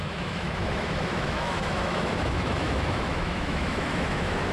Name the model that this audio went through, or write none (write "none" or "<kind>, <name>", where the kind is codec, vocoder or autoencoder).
autoencoder, DAC-VAE